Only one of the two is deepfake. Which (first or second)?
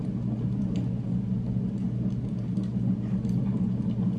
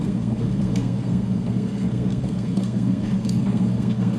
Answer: second